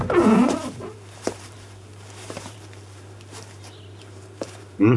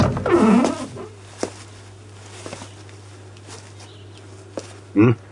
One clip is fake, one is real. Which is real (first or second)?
second